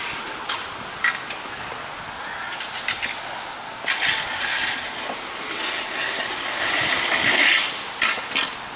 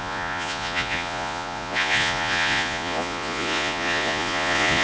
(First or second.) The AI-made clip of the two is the second